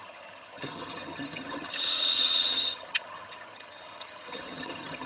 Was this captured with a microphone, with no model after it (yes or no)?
no